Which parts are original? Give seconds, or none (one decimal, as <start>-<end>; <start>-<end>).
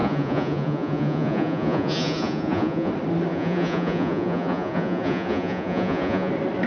2.9-3.3; 6.3-6.7